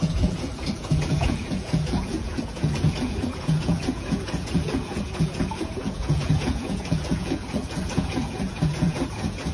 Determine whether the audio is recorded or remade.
remade